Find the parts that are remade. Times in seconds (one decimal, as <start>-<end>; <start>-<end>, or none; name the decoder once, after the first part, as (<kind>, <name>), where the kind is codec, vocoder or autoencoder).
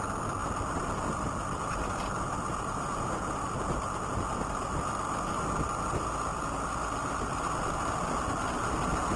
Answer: 0.4-3.4 (vocoder, BigVGAN v2); 6.3-7.3